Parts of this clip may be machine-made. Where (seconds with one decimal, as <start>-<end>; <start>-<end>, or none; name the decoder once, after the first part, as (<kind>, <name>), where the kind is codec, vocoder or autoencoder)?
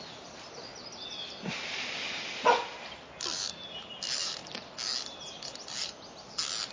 0.0-0.7 (vocoder, BigVGAN v2); 2.2-4.4